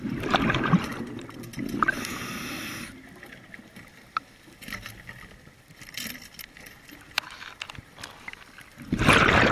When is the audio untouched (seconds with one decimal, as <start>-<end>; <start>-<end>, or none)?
0.0-9.5